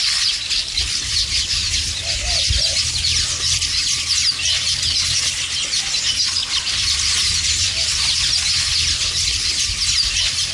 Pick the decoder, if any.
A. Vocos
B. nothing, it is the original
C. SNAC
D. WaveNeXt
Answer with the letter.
B